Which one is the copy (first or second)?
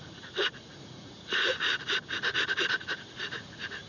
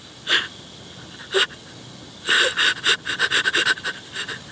first